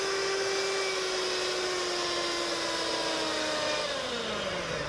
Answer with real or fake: real